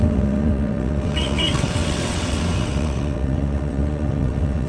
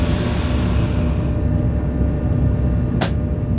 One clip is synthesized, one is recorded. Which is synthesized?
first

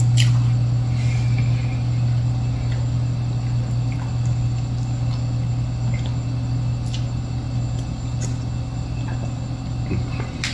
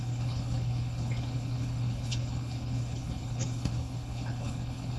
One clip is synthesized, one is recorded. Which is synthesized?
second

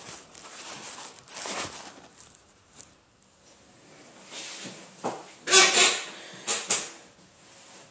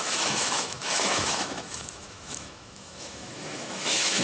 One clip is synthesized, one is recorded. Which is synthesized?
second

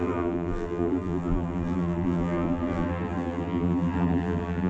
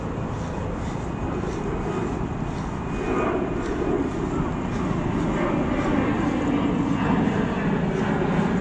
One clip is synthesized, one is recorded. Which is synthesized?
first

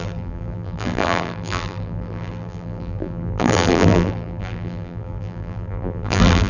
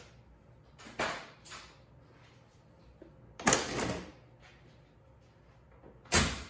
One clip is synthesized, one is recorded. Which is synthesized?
first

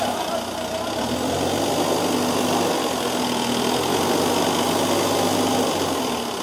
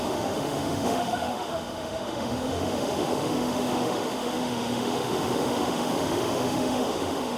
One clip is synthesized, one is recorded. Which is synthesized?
second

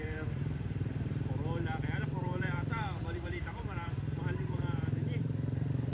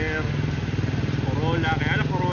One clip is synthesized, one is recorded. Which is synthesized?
first